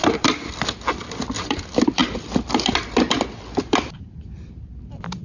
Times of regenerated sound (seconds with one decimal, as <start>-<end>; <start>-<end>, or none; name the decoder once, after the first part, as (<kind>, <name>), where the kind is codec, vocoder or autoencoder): 0.0-2.0 (vocoder, BigVGAN v2); 3.6-5.2

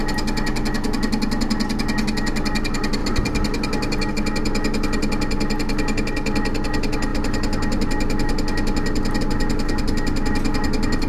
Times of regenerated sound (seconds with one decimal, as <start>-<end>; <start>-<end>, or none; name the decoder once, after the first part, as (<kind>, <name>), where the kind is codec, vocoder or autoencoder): 3.0-4.1 (vocoder, BigVGAN v2)

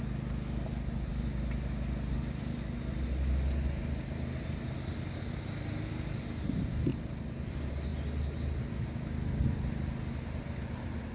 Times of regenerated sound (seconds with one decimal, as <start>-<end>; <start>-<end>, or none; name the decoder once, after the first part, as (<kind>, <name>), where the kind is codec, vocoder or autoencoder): 6.9-7.5 (vocoder, BigVGAN v2)

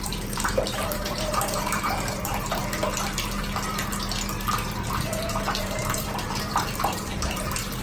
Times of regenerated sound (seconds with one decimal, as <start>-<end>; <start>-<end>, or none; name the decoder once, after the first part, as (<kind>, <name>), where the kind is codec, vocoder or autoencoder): 0.0-2.6 (vocoder, BigVGAN v2); 5.6-7.8

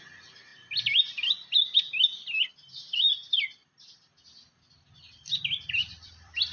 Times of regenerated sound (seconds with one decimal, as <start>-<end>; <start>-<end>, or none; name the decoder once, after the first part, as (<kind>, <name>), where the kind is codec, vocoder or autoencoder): 0.0-0.5 (vocoder, BigVGAN v2); 2.5-3.6; 5.8-6.5

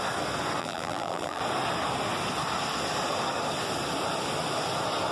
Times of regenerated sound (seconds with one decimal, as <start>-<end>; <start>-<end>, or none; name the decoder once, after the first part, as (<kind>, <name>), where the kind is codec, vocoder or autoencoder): 0.6-1.4 (vocoder, BigVGAN v2)